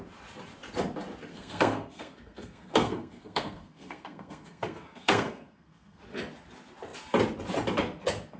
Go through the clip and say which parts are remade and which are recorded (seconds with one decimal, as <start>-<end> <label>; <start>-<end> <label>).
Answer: 0.0-1.3 recorded; 1.3-6.0 remade; 6.0-8.4 recorded